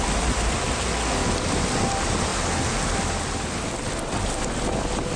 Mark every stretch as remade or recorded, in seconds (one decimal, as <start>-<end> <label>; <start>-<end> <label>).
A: 0.0-5.2 recorded